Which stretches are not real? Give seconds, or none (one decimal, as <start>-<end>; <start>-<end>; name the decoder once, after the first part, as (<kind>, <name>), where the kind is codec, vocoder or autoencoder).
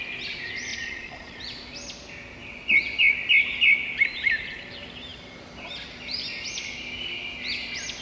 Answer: 0.7-1.4 (vocoder, Vocos)